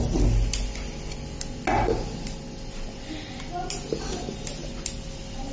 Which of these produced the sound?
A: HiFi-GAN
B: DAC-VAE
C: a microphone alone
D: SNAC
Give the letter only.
C